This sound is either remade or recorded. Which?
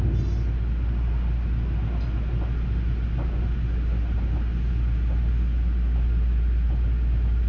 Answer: recorded